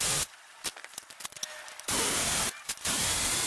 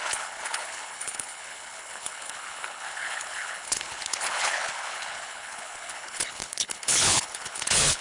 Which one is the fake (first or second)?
second